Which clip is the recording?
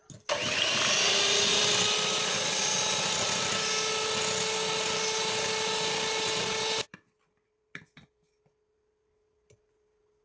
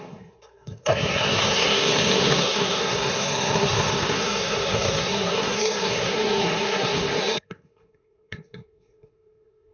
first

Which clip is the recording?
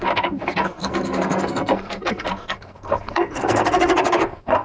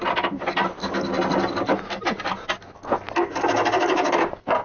second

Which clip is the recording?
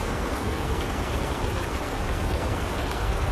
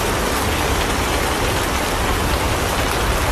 second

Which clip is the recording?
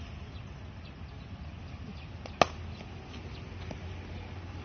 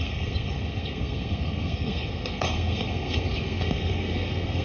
first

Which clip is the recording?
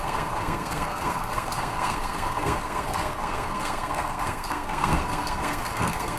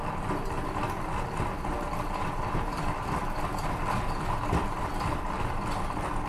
second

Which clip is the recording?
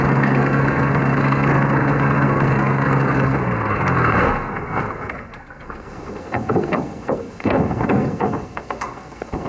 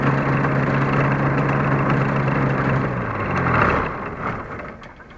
second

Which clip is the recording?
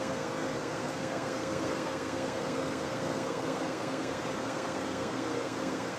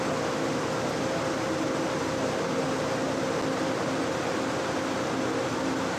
second